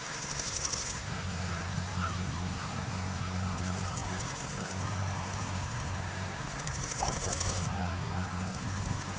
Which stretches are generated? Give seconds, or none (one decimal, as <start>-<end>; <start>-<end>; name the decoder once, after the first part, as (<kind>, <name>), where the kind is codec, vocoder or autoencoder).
0.0-9.2 (codec, SNAC)